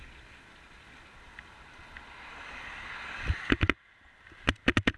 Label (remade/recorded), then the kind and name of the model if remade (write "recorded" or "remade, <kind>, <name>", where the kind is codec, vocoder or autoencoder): recorded